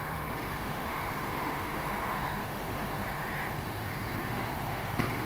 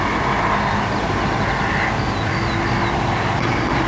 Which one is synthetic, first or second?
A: first